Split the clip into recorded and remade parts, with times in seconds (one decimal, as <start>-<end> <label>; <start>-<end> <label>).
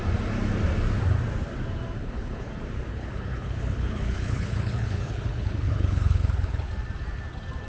0.0-2.0 recorded; 2.0-2.5 remade; 2.5-2.9 recorded; 2.9-6.7 remade; 6.7-7.7 recorded